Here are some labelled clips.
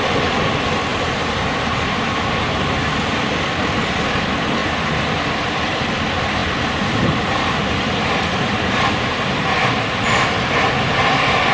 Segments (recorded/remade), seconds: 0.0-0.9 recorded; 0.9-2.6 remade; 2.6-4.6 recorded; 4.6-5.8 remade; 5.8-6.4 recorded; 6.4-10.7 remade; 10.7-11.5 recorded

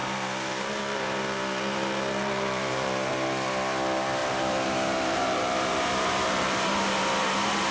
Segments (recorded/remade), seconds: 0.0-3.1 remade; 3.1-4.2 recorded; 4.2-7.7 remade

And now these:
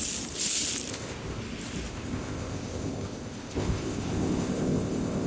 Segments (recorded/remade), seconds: 0.0-0.9 recorded; 0.9-1.4 remade; 1.4-1.9 recorded; 1.9-5.3 remade